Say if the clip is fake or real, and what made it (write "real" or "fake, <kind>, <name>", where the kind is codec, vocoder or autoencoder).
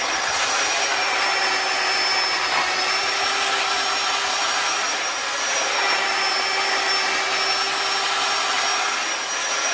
real